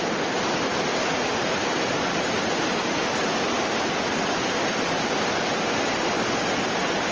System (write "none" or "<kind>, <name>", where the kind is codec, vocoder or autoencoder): none